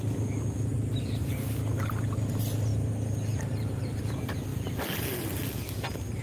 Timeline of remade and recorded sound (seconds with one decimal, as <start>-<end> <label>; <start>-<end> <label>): 0.0-6.2 recorded